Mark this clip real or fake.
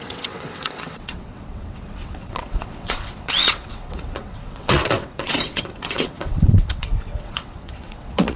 fake